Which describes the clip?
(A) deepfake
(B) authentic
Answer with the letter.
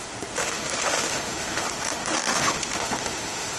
A